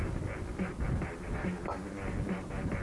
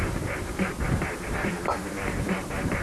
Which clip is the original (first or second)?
first